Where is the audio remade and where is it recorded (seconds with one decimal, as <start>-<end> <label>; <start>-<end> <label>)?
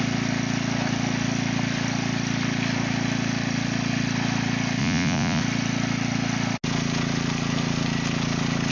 0.0-4.8 recorded; 4.8-5.4 remade; 5.4-8.7 recorded